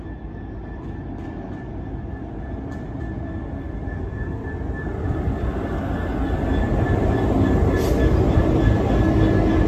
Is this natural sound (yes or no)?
yes